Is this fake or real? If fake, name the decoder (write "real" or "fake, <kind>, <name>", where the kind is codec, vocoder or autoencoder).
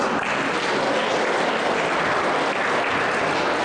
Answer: real